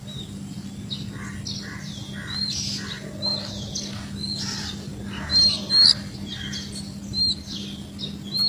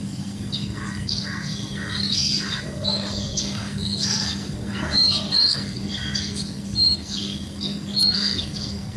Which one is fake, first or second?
second